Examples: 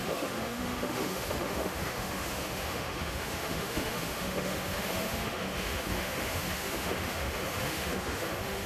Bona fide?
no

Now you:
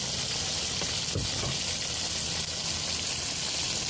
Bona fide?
yes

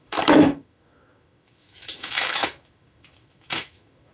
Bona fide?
no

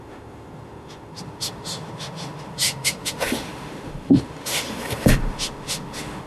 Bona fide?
no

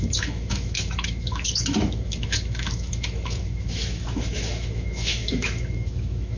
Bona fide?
no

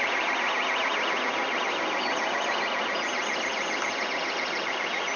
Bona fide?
yes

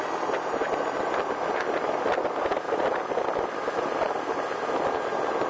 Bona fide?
yes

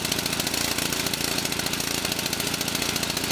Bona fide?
yes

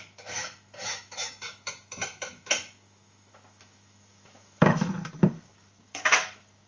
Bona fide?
no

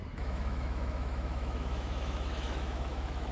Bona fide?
no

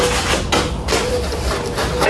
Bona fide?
yes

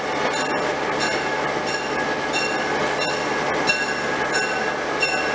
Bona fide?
yes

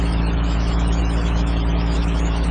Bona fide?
no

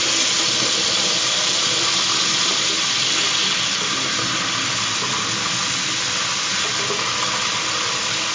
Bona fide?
yes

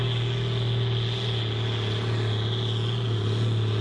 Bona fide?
yes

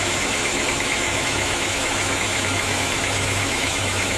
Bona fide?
no